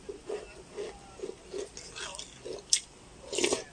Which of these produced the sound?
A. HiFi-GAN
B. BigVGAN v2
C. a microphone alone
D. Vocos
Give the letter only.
C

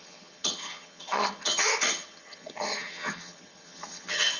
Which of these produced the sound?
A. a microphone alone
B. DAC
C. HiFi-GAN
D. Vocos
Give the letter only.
C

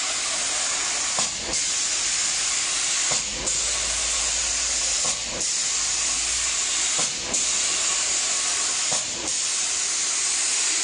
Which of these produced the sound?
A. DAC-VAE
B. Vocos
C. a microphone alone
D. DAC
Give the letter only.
C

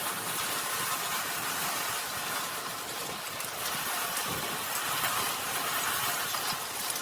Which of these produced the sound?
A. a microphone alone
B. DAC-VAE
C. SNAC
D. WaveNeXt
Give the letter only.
A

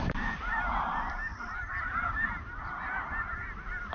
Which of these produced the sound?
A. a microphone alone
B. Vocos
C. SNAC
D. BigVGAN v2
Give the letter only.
A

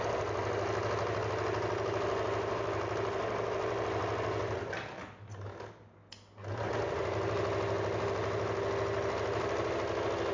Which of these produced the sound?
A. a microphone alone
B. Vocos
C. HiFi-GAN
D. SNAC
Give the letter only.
A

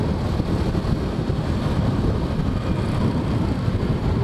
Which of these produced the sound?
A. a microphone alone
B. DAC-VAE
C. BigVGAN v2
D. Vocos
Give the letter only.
A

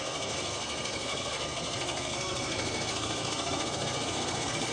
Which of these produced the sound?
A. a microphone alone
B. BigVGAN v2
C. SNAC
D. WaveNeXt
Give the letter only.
C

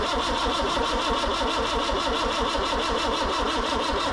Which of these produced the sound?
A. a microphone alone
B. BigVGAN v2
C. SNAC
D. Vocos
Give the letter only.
B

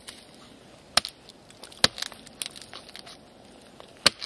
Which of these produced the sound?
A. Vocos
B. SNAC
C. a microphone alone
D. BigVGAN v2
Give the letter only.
C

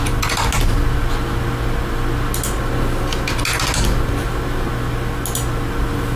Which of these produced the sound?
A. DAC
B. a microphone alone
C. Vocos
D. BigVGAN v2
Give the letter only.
B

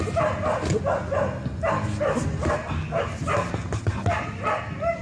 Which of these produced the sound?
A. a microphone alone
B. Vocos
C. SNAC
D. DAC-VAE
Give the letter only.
A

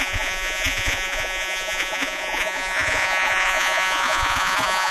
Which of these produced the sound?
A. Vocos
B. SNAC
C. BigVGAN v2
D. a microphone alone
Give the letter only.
A